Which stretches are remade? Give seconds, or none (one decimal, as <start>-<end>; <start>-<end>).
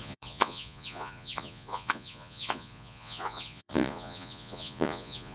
0.0-5.3